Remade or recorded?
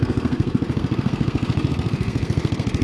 remade